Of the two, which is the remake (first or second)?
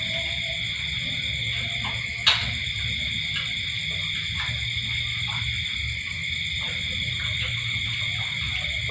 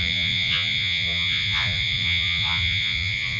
second